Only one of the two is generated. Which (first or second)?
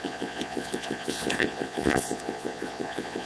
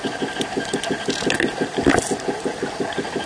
first